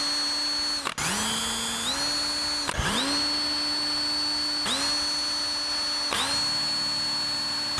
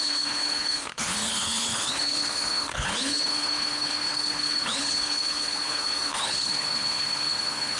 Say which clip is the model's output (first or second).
second